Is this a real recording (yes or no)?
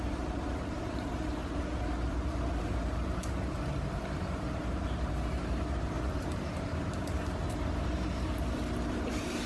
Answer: no